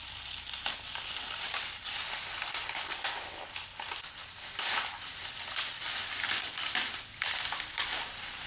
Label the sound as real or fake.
real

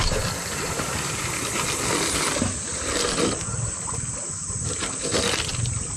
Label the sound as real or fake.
real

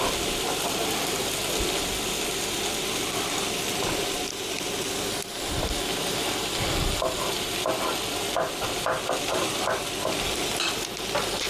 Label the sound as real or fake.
real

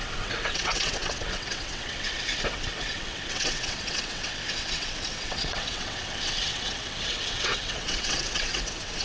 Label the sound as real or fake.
fake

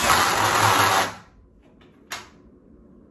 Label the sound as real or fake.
real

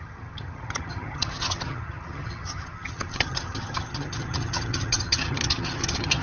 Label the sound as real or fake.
fake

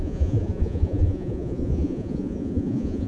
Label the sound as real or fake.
fake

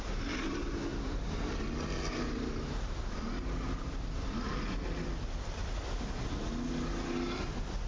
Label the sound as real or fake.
real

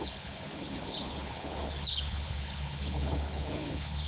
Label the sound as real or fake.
fake